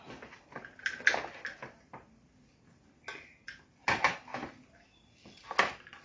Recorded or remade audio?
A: recorded